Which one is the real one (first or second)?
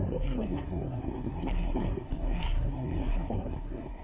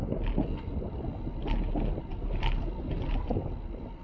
second